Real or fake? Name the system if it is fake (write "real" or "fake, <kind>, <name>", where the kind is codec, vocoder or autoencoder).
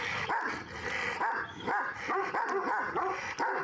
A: real